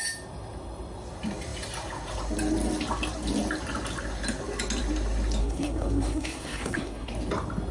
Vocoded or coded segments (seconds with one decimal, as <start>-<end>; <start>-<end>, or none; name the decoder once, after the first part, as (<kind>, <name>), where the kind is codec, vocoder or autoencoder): 5.4-7.1 (codec, SNAC)